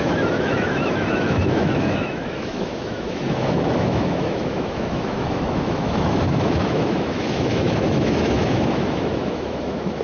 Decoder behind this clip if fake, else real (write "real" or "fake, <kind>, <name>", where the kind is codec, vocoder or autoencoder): fake, autoencoder, DAC-VAE